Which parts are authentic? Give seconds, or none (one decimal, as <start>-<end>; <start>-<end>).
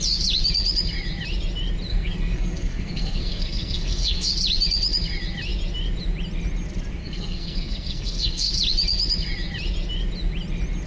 0.0-1.9; 4.3-7.0; 8.5-10.9